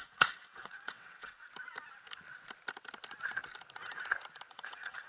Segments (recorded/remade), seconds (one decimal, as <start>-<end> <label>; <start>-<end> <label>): 0.0-1.4 remade; 1.4-4.5 recorded; 4.5-5.1 remade